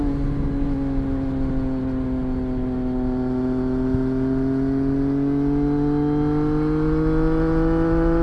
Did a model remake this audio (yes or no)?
no